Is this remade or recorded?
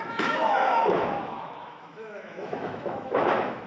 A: remade